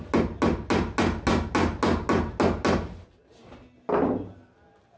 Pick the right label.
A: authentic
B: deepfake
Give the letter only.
A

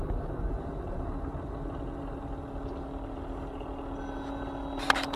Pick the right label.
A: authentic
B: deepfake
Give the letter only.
A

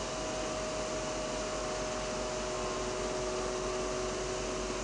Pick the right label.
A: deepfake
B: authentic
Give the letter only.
B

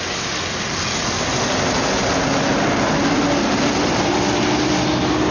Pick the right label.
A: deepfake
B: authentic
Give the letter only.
B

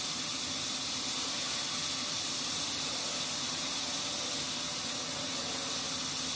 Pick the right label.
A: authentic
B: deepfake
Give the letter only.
A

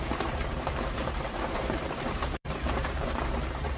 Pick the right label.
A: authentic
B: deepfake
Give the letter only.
B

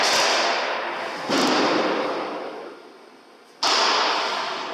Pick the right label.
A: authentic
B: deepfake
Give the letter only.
A